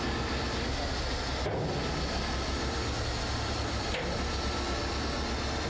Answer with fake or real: real